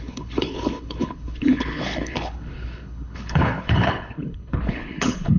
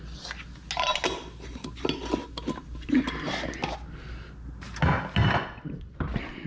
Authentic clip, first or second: second